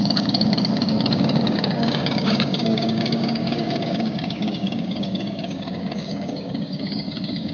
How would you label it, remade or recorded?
remade